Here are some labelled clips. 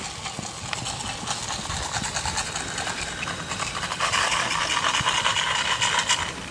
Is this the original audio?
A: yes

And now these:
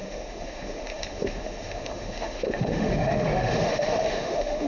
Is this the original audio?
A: no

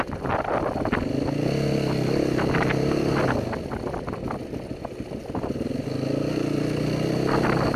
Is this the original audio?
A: yes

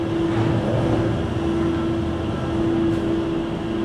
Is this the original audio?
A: yes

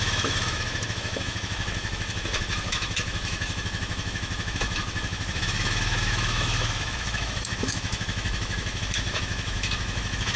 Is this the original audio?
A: no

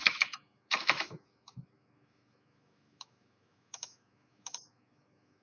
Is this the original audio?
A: no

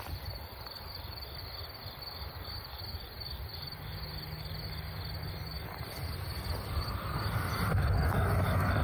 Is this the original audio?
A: yes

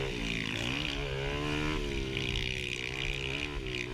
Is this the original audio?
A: yes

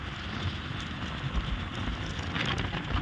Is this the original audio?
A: yes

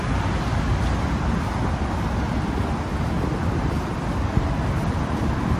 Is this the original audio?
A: yes